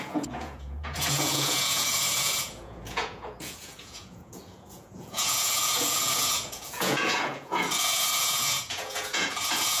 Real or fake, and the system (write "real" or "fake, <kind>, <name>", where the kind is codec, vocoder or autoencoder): fake, vocoder, Vocos